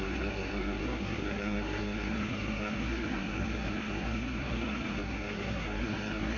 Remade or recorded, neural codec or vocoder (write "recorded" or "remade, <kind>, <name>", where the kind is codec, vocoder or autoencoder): remade, codec, SNAC